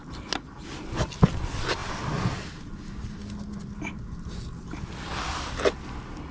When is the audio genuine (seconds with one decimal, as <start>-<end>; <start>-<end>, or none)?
0.0-6.3

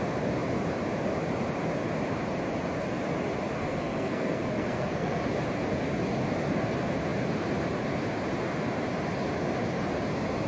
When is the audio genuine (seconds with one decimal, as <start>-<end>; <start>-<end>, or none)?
0.0-3.6; 5.2-10.5

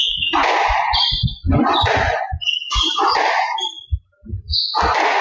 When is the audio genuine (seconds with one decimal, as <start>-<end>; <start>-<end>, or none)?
0.0-5.2

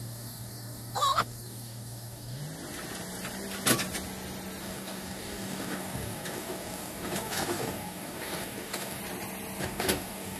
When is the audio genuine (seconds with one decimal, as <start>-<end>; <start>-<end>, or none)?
2.4-4.6; 9.0-9.6